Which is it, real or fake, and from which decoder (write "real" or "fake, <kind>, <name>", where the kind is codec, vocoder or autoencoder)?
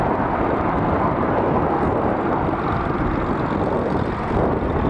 real